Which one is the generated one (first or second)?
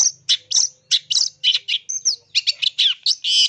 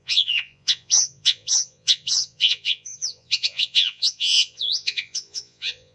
second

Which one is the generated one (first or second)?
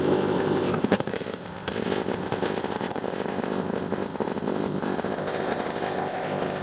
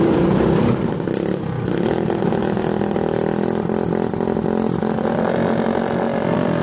first